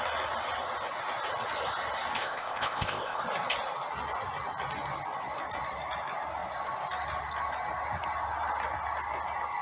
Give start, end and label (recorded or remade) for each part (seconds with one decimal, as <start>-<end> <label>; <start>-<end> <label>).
0.0-2.1 recorded; 2.1-3.2 remade; 3.2-9.6 recorded